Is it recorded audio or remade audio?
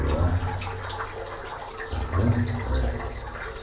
recorded